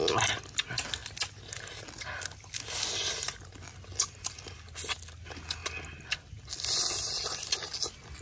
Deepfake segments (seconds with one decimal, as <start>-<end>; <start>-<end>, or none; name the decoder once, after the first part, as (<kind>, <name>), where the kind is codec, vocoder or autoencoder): none